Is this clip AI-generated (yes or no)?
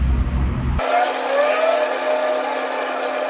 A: no